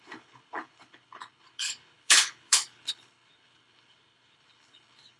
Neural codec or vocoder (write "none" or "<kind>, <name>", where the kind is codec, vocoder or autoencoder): codec, HILCodec